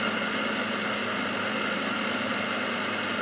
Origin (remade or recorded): recorded